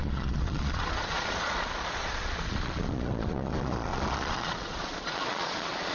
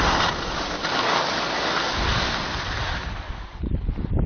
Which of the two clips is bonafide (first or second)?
second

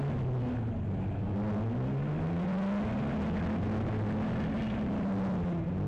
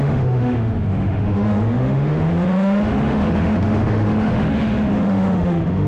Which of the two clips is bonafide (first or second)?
first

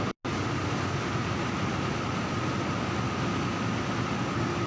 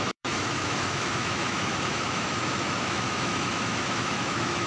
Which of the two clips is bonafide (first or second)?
first